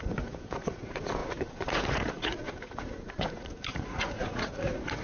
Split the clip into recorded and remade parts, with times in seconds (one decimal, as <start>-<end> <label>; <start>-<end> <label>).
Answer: 0.0-5.0 remade